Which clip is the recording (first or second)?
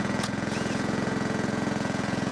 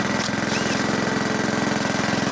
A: second